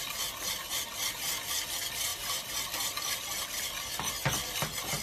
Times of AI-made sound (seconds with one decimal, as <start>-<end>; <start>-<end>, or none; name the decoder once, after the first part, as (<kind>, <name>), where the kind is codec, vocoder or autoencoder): none